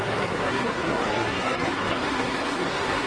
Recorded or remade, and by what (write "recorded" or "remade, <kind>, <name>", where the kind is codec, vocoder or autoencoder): remade, codec, SNAC